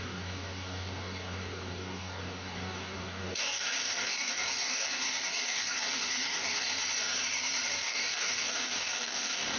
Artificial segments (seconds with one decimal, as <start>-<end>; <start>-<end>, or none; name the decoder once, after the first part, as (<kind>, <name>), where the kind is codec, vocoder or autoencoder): 0.0-6.7 (codec, DAC); 7.7-9.6